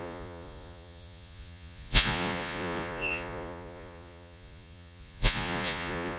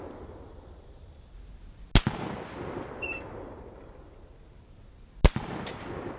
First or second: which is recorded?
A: second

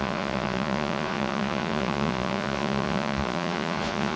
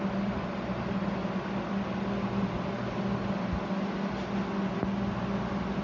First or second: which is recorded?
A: second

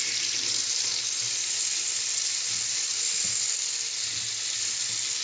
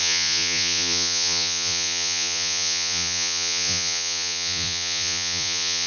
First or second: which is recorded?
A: first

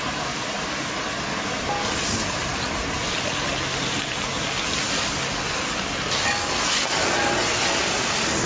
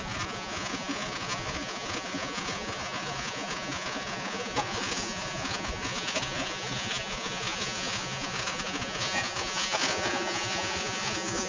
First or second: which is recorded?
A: first